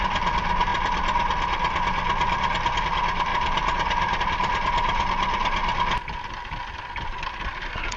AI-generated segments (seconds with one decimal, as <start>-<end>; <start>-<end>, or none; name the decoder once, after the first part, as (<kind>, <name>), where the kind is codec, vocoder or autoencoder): 0.0-0.7 (vocoder, BigVGAN v2); 2.8-5.6; 6.3-8.0

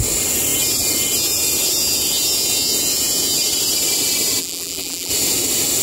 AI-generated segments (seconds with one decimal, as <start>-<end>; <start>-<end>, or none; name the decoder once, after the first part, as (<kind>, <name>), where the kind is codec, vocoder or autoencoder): 4.4-5.1 (vocoder, BigVGAN v2)

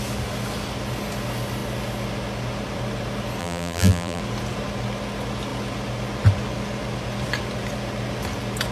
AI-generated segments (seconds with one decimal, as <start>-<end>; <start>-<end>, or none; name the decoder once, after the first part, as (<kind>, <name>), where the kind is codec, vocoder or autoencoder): 3.4-4.2 (vocoder, BigVGAN v2)

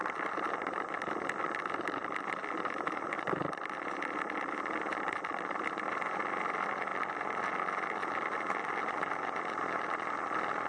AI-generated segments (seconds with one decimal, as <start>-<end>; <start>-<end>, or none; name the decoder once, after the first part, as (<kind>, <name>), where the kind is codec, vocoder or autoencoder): 6.9-7.5 (vocoder, BigVGAN v2)

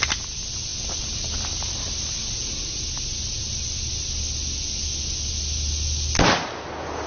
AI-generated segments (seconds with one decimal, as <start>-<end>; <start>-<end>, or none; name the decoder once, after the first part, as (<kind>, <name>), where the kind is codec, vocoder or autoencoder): none